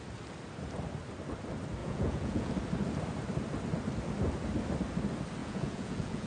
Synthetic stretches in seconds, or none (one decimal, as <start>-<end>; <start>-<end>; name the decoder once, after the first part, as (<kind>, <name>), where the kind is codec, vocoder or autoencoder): 1.8-2.5 (vocoder, Vocos); 5.4-6.3

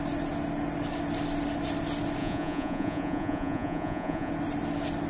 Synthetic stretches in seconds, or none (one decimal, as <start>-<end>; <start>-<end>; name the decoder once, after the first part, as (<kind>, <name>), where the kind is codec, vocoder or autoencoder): 2.2-4.3 (vocoder, Vocos)

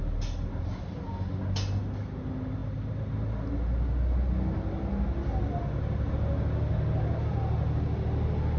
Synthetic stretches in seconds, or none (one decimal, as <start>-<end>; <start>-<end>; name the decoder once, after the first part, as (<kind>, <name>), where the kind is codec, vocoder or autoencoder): none

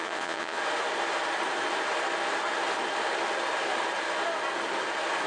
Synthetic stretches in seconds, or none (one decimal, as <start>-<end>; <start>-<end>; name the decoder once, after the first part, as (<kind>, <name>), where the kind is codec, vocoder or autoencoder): 0.0-0.6 (vocoder, Vocos)

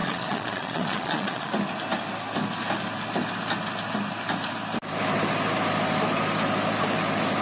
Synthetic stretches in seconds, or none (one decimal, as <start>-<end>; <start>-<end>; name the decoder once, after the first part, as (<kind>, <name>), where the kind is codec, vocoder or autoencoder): 0.0-1.5 (vocoder, Vocos)

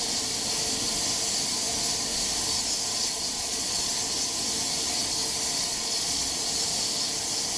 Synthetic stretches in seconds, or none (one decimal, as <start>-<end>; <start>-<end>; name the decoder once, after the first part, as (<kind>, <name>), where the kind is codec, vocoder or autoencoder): 3.0-3.9 (vocoder, Vocos); 5.7-6.5

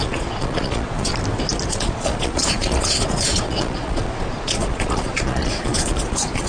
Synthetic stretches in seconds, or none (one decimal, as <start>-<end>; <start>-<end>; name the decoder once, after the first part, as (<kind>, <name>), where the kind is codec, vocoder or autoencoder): 0.0-1.1 (vocoder, Vocos); 1.7-6.5